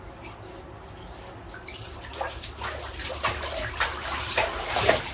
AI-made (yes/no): no